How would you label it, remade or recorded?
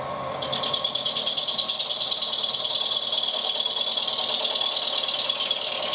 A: recorded